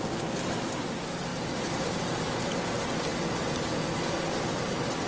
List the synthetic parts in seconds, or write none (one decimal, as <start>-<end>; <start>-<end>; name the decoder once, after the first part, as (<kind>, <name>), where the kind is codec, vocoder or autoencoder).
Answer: none